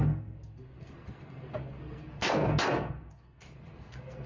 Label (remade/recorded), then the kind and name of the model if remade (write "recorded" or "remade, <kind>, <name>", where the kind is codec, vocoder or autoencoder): remade, codec, SNAC